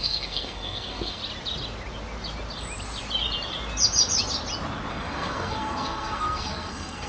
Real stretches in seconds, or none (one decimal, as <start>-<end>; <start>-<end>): 1.2-4.9